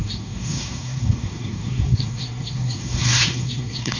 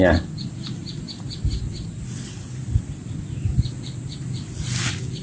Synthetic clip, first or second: first